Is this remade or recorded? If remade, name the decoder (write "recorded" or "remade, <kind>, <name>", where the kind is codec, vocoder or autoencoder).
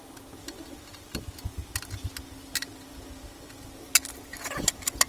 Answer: recorded